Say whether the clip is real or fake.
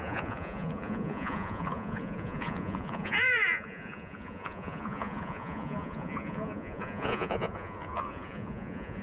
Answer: fake